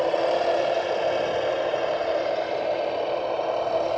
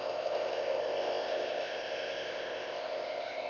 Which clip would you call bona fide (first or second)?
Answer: first